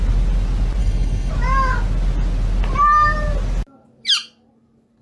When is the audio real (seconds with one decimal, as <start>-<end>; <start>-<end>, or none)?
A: 0.0-0.8; 1.3-5.0